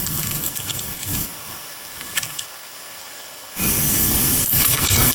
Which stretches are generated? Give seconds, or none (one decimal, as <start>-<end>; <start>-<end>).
0.0-5.1